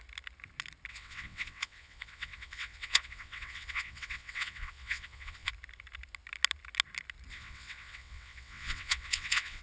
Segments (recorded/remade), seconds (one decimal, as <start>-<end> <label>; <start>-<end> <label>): 0.0-0.9 recorded; 0.9-5.5 remade; 5.5-7.3 recorded; 7.3-9.6 remade